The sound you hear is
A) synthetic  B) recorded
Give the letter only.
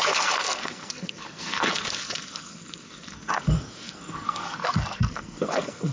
A